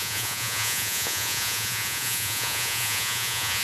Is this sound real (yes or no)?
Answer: no